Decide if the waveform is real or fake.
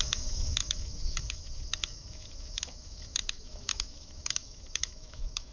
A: fake